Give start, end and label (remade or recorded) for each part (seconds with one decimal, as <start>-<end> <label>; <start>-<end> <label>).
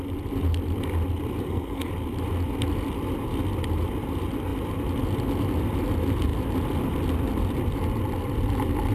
0.0-1.4 recorded; 1.4-1.9 remade; 1.9-8.9 recorded